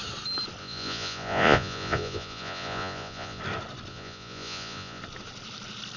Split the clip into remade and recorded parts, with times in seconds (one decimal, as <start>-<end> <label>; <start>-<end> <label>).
0.0-0.6 recorded; 0.6-3.4 remade; 3.4-3.9 recorded; 3.9-5.0 remade; 5.0-6.0 recorded